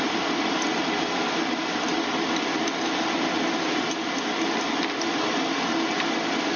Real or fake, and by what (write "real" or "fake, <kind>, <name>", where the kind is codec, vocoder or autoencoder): real